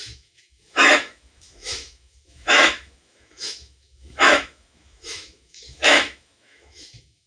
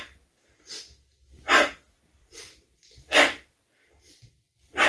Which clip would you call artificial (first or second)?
first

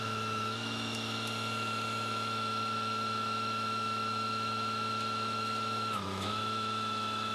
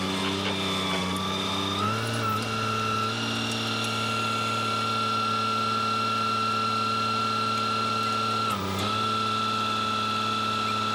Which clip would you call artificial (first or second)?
first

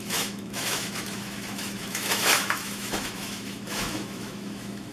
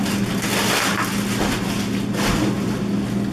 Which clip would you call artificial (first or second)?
first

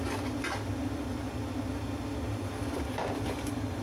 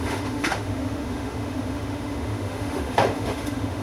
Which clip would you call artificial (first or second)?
second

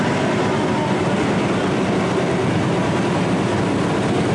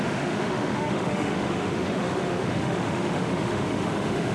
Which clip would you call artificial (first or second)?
second